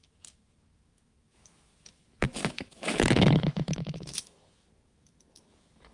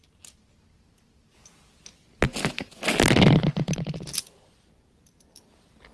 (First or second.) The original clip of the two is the second